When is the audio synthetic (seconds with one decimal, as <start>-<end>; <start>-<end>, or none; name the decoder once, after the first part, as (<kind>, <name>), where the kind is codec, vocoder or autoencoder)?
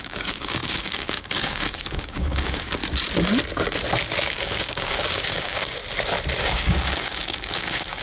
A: 0.0-2.8 (codec, DAC); 4.2-5.8; 6.4-8.0